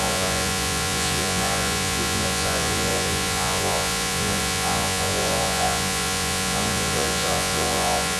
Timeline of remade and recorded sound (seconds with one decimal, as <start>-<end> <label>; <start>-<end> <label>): 0.0-8.2 remade